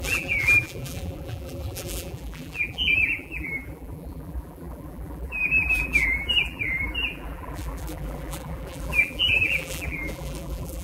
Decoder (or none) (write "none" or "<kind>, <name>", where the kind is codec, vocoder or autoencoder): vocoder, BigVGAN v2